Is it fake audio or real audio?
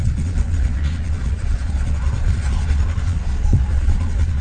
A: fake